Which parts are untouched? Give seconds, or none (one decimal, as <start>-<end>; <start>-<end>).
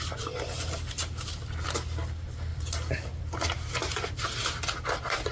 0.0-2.5; 3.1-5.3